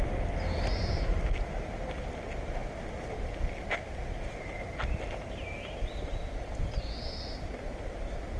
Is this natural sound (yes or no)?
yes